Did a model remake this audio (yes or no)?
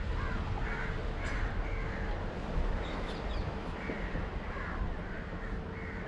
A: no